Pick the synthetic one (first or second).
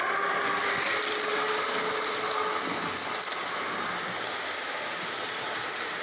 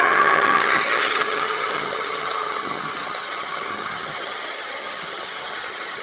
second